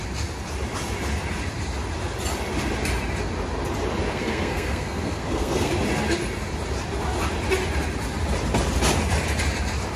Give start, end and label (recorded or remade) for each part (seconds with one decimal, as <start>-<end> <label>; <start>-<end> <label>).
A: 0.0-4.1 recorded; 4.1-5.7 remade; 5.7-10.0 recorded